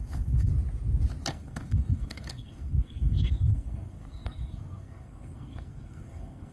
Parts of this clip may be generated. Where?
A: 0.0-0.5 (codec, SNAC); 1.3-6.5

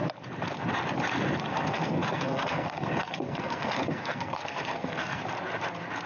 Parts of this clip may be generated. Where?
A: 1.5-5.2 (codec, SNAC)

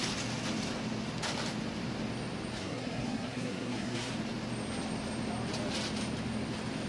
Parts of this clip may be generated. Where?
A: 2.6-4.1 (codec, SNAC)

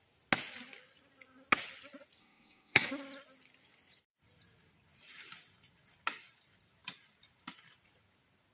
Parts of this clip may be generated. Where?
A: 2.2-2.9 (codec, SNAC)